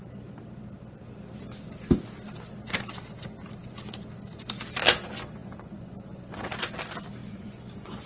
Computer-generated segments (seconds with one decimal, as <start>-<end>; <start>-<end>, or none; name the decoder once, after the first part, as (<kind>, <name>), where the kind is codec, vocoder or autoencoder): 5.4-6.2 (vocoder, Vocos); 7.2-8.1